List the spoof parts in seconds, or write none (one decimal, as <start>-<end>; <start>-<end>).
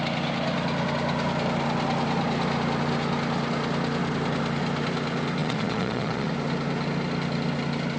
5.4-6.3